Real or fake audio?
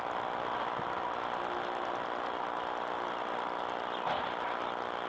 real